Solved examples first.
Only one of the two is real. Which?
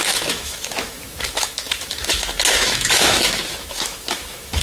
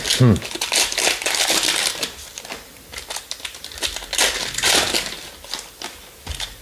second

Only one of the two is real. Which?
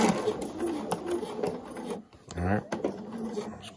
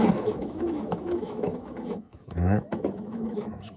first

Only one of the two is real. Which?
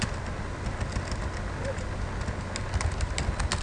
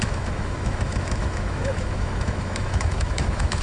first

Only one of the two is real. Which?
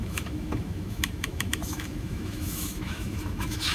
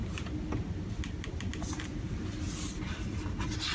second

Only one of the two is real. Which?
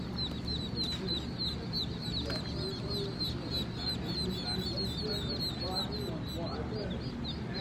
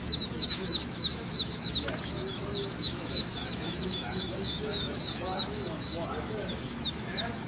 first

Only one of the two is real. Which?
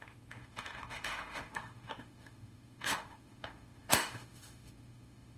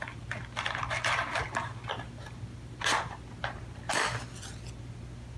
second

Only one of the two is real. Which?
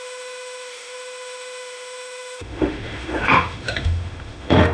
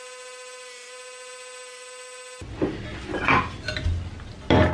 second